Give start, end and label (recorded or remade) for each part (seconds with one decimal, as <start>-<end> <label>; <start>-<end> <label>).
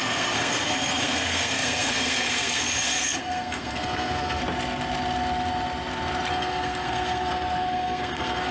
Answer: 0.0-4.4 remade; 4.4-6.3 recorded; 6.3-8.5 remade